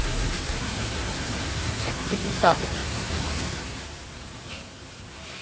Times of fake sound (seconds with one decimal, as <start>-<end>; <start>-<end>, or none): 0.0-5.4